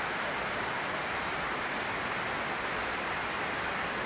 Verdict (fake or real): real